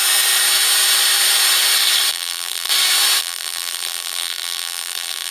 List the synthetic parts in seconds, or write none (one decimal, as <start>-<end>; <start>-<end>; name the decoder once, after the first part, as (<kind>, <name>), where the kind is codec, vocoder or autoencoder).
2.1-2.7 (vocoder, BigVGAN v2); 3.2-5.3